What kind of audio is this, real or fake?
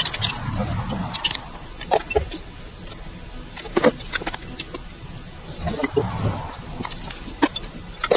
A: real